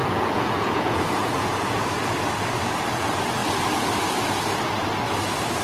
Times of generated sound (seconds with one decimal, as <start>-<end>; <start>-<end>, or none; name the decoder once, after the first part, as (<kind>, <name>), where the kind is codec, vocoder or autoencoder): 0.0-1.8 (vocoder, Vocos)